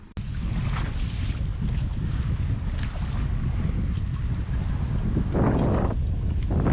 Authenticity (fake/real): real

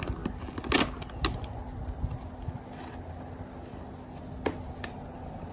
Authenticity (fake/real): real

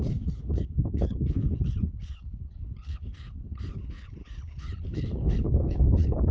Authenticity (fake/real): fake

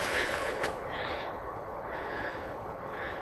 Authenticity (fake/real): fake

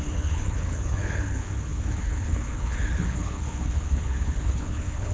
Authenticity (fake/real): fake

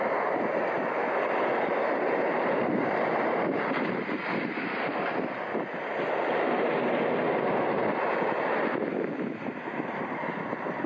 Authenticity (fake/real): real